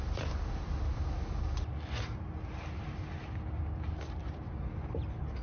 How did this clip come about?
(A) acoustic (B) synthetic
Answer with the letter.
A